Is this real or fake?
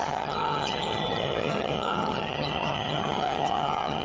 fake